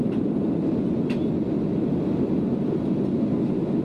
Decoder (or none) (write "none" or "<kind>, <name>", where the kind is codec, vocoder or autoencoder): none